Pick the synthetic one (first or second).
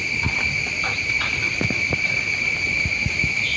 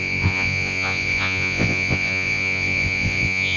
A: second